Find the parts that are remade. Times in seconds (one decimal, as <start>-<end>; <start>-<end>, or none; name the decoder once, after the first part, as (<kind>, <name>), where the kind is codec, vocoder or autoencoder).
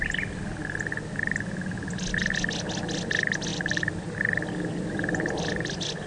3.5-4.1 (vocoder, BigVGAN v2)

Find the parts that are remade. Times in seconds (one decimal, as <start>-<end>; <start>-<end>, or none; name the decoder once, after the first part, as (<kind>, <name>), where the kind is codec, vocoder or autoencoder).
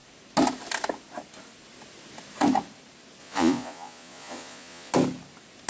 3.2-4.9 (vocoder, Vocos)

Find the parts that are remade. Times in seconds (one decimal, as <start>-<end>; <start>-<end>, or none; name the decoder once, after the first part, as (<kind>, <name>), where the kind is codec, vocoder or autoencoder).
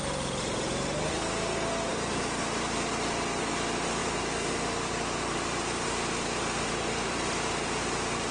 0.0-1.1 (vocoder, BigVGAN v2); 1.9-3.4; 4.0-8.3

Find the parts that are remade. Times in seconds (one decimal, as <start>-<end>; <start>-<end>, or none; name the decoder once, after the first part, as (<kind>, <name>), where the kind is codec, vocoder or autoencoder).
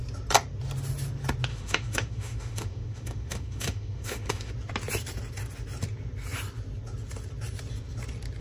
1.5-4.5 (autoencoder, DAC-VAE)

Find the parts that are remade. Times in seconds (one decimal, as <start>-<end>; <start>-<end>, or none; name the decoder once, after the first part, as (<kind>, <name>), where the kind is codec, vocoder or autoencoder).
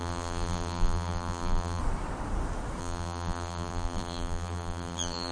0.0-1.8 (vocoder, BigVGAN v2); 2.8-5.3